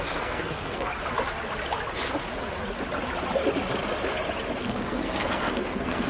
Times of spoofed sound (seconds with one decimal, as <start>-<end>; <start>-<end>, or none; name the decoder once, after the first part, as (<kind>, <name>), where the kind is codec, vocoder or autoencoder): 0.0-0.9 (codec, SNAC); 4.6-6.1